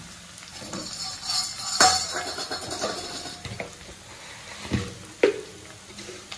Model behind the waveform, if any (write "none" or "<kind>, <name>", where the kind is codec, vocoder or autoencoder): none